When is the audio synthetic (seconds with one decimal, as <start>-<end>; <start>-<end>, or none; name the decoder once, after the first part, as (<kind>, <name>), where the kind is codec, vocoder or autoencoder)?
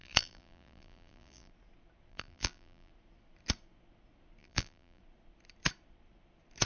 0.0-1.5 (vocoder, BigVGAN v2); 2.1-2.9; 4.4-5.0